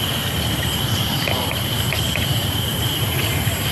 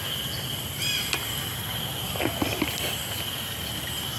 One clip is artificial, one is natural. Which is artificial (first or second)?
first